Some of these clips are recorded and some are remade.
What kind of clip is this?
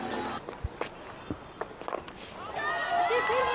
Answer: recorded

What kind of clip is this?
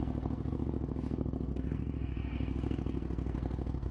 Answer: remade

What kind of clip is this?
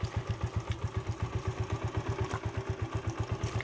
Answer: recorded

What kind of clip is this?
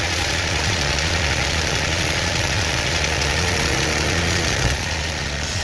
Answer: remade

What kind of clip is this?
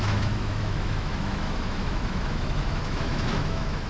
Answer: remade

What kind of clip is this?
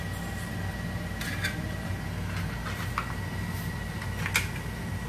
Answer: recorded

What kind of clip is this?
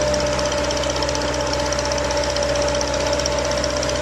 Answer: recorded